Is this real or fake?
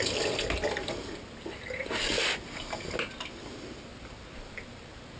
real